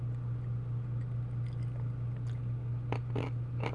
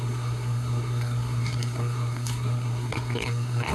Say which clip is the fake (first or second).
second